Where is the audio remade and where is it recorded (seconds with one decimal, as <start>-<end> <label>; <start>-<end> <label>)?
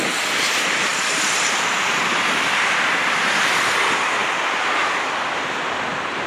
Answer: 0.0-4.2 remade; 4.2-4.9 recorded; 4.9-6.3 remade